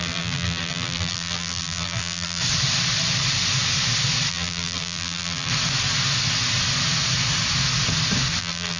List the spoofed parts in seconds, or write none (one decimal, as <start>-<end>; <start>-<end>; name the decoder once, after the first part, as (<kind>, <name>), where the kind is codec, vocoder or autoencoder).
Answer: 0.0-2.4 (vocoder, BigVGAN v2); 4.3-5.5; 8.4-8.8